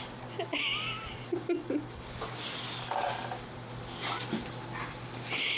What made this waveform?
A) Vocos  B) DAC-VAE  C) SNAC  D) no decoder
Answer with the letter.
D